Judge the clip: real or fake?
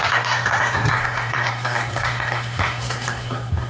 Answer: fake